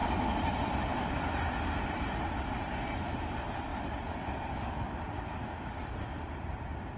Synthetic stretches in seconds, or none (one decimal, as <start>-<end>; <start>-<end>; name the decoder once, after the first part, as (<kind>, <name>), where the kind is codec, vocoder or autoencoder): none

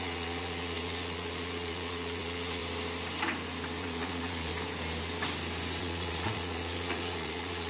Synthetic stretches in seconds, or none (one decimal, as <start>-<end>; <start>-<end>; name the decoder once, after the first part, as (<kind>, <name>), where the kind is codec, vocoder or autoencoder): 0.0-2.6 (vocoder, Vocos); 3.8-4.5; 5.8-7.7

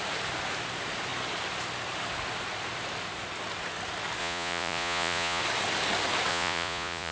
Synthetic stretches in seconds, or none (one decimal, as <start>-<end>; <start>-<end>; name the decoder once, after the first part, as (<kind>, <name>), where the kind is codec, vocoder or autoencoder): 4.2-5.4 (vocoder, Vocos); 6.3-7.1

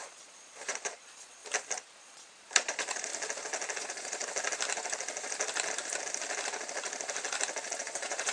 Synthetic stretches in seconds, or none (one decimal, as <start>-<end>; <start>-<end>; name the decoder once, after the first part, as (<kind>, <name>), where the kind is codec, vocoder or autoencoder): 0.0-1.4 (vocoder, Vocos); 2.0-3.1; 3.8-4.2; 7.8-8.3